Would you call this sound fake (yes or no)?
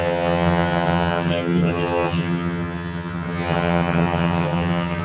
yes